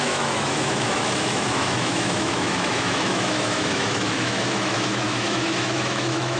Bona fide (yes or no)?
no